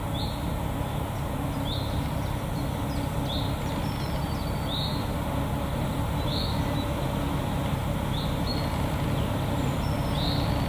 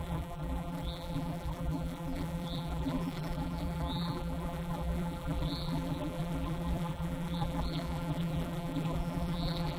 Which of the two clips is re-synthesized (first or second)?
second